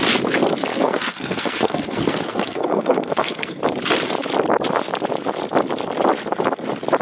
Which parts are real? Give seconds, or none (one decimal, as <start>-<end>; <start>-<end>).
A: 0.0-0.7; 3.6-7.0